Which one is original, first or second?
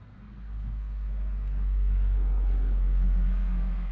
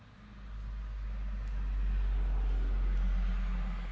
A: second